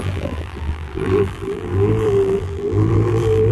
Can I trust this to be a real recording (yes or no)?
no